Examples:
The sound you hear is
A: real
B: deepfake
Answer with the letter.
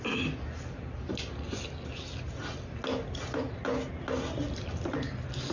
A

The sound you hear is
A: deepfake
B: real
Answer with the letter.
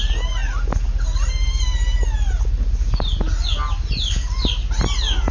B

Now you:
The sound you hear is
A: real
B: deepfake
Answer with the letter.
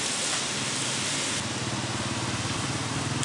A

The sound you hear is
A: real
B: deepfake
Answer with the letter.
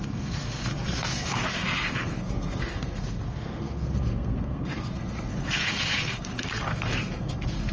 B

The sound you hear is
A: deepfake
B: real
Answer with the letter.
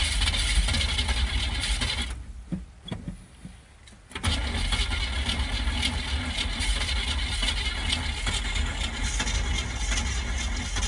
B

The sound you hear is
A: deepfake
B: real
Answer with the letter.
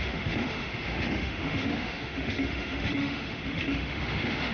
A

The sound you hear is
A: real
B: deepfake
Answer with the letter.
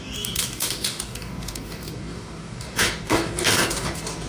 B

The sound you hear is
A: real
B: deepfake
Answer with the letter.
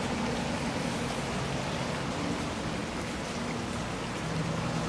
A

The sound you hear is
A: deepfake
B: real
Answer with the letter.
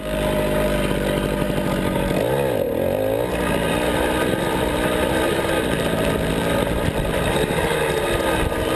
B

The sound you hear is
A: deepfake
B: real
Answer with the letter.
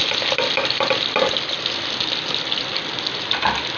B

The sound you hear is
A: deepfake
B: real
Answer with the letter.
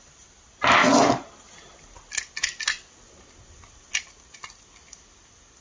B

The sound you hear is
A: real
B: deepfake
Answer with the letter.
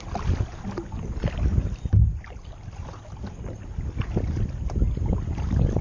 A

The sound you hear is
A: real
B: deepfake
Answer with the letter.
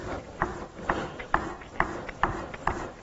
A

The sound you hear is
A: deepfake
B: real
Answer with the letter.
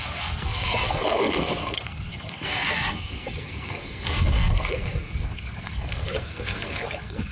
A